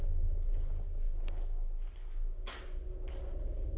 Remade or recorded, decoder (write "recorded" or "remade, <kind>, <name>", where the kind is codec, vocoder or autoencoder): recorded